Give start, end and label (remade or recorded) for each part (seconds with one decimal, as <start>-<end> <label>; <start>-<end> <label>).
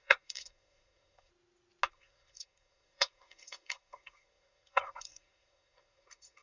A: 0.0-1.3 remade; 1.3-1.9 recorded; 1.9-6.4 remade